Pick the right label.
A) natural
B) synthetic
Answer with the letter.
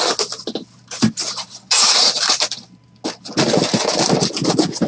A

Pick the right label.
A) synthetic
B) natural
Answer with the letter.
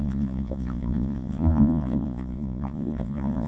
A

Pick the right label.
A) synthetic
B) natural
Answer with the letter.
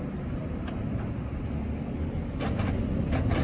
B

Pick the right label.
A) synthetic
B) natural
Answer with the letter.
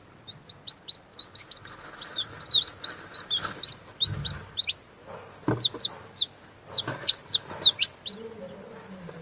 B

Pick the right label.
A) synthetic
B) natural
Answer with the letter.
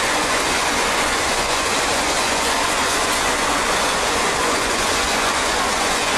A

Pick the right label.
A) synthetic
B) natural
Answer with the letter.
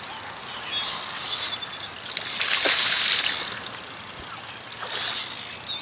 B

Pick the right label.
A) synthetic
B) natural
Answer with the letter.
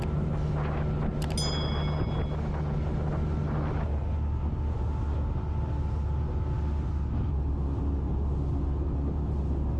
B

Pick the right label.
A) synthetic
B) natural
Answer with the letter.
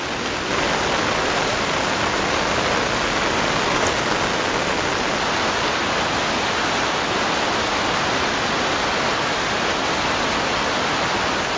B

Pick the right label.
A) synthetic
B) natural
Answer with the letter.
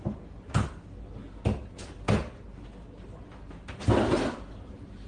B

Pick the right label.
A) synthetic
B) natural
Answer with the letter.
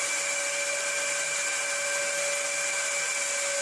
B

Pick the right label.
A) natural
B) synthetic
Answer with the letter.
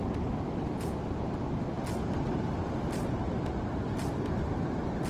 A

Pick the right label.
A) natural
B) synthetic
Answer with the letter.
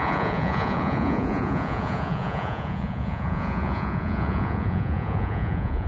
B